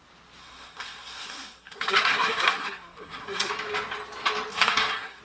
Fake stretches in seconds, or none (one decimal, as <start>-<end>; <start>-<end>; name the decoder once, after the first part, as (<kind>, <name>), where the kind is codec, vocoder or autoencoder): 0.4-3.5 (codec, SNAC); 4.5-5.2